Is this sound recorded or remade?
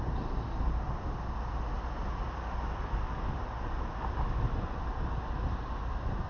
recorded